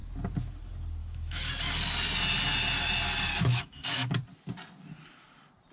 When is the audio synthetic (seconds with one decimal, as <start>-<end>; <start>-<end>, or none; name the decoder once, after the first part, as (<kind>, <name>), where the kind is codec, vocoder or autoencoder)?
1.0-1.5 (autoencoder, DAC-VAE); 3.3-4.2